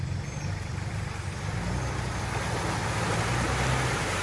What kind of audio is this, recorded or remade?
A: recorded